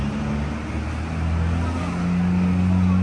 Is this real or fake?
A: real